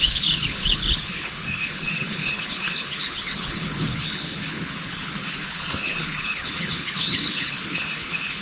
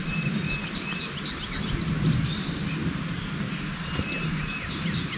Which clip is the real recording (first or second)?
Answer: second